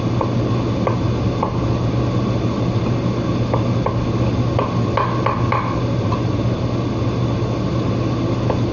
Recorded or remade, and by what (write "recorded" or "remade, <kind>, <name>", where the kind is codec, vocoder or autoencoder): recorded